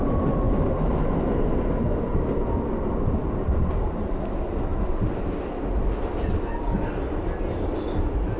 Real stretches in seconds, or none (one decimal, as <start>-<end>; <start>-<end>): 0.0-8.4